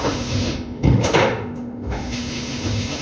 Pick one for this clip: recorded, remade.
remade